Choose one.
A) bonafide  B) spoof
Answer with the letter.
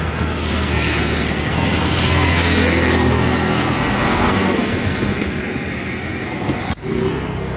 B